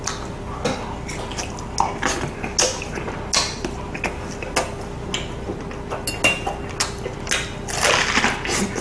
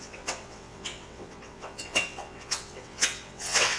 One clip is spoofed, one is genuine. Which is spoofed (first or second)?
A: second